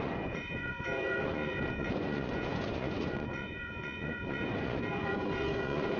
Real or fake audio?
fake